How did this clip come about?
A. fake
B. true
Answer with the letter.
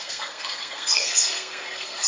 A